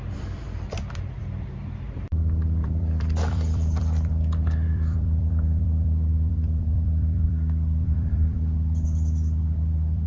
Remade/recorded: remade